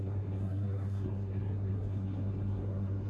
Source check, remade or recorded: remade